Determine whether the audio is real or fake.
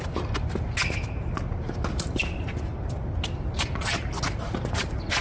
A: real